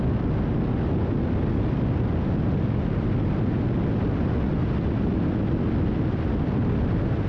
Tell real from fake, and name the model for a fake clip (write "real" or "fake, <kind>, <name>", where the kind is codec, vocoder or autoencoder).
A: real